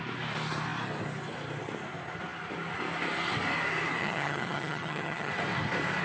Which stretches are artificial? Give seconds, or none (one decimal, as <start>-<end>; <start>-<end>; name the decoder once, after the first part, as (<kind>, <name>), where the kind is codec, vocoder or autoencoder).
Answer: 4.0-5.3 (vocoder, HiFi-GAN)